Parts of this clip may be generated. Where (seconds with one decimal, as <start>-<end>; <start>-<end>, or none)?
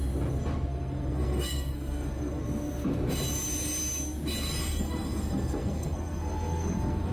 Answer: 0.7-2.4; 4.7-7.1